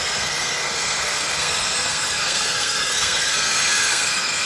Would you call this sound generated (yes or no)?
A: yes